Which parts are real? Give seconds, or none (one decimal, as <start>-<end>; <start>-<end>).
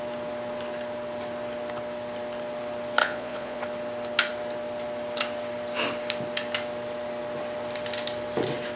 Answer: 0.0-3.0; 3.6-8.8